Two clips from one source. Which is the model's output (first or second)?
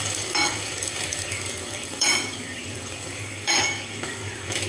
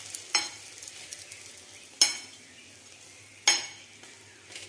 first